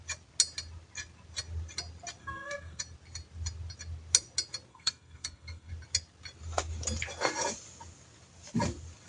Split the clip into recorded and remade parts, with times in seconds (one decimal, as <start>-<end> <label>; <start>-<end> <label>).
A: 0.0-2.2 recorded; 2.2-2.8 remade; 2.8-4.7 recorded; 4.7-5.7 remade; 5.7-9.1 recorded